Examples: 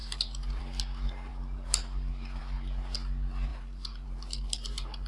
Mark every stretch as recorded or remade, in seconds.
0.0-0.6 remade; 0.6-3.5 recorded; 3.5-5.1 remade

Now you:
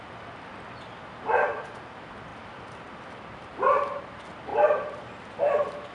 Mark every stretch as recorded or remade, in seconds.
0.0-2.3 recorded; 2.3-4.0 remade; 4.0-4.5 recorded; 4.5-5.3 remade; 5.3-5.9 recorded

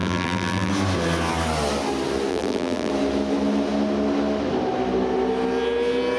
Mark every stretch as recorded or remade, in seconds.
0.0-0.7 remade; 0.7-2.3 recorded; 2.3-2.9 remade; 2.9-6.2 recorded